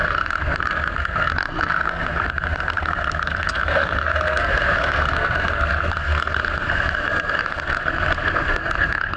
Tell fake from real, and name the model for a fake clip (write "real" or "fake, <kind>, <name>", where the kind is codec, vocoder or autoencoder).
fake, codec, SNAC